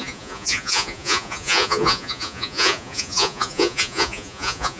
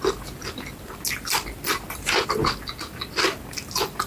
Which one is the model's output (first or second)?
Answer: first